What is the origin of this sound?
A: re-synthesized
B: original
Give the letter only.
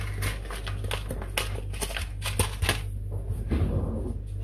B